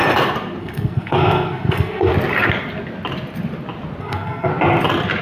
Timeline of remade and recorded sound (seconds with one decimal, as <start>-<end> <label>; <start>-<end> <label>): 0.0-0.6 recorded; 0.6-2.1 remade; 2.1-4.0 recorded; 4.0-4.5 remade; 4.5-5.2 recorded

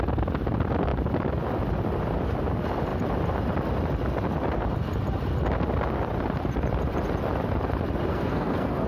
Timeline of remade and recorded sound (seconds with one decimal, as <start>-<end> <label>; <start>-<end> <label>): 0.0-8.1 recorded; 8.1-8.9 remade

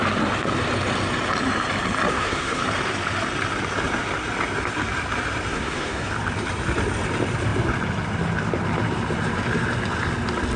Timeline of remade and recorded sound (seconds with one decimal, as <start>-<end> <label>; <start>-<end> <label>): 0.0-2.1 recorded; 2.1-2.6 remade; 2.6-5.5 recorded; 5.5-6.1 remade; 6.1-10.6 recorded